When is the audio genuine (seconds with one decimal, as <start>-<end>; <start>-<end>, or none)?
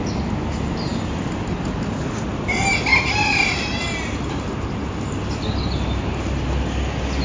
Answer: 0.0-7.2